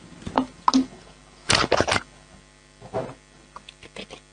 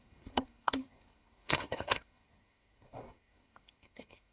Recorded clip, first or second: first